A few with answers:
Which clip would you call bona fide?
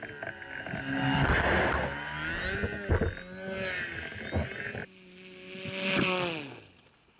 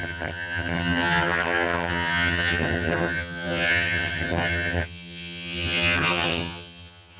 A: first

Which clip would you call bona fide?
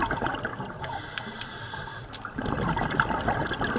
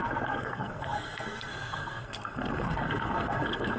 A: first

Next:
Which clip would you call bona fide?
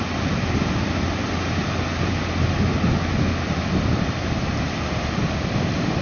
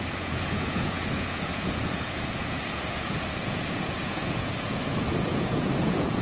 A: first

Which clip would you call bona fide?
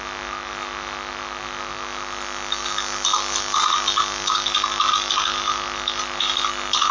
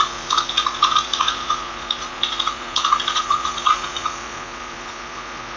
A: first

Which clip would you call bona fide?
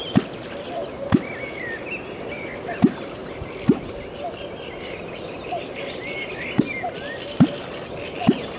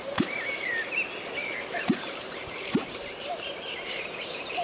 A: first